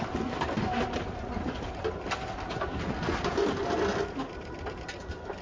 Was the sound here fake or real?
real